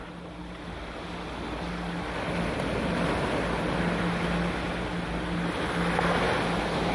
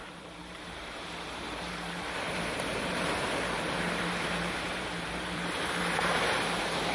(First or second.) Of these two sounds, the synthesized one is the second